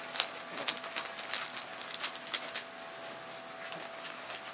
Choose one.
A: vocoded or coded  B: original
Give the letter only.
B